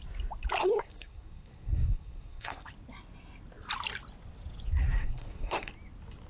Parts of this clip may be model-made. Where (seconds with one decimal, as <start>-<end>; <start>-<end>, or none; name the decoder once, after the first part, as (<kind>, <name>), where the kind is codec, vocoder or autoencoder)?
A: 0.6-2.7 (codec, SNAC); 4.8-5.7